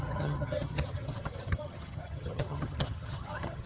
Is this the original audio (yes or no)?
no